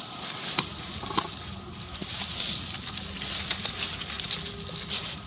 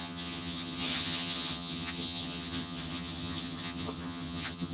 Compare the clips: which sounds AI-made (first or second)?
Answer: second